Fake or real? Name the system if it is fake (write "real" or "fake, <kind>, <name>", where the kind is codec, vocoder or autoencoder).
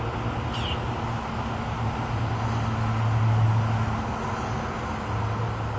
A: real